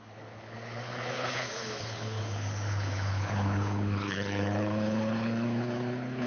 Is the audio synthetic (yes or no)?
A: yes